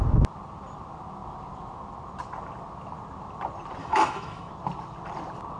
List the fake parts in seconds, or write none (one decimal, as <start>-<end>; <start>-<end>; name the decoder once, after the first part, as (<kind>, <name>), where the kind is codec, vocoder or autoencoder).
3.8-4.5 (autoencoder, DAC-VAE)